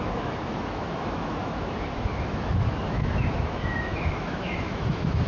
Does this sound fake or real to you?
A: fake